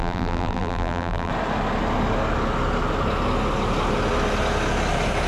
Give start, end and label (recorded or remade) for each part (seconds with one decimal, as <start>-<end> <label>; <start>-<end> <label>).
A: 0.0-1.3 remade; 1.3-5.3 recorded